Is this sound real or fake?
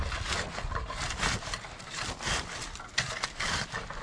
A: real